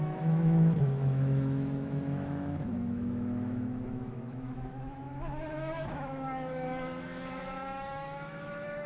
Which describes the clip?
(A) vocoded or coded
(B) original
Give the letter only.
A